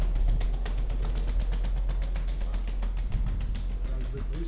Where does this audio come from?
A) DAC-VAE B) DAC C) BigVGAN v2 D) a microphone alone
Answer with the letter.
D